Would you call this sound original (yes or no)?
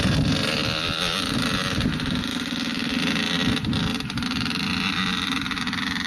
yes